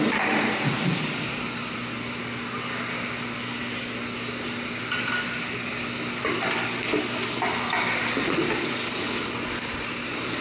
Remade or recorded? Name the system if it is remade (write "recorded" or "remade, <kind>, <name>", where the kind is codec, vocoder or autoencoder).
recorded